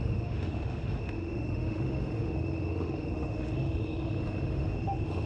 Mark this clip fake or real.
fake